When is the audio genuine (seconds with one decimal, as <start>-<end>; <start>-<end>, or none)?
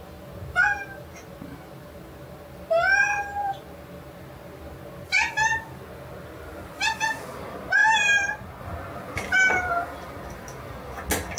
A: 0.0-11.4